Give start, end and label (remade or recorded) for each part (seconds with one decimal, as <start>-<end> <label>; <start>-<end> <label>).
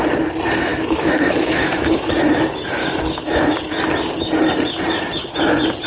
0.0-0.7 recorded; 0.7-2.1 remade; 2.1-2.8 recorded; 2.8-3.5 remade; 3.5-5.9 recorded